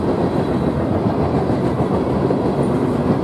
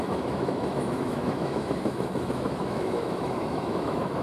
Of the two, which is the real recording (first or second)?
first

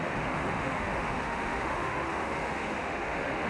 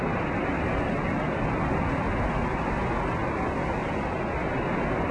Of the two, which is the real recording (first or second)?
second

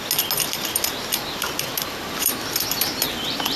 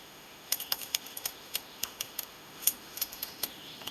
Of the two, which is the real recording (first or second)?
first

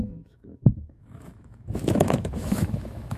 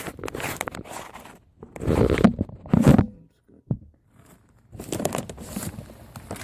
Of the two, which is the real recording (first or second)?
second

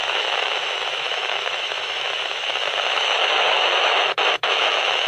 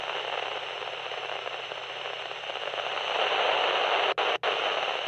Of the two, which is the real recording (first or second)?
second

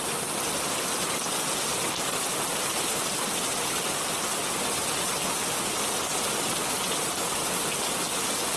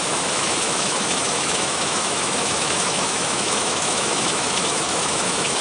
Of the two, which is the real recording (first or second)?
first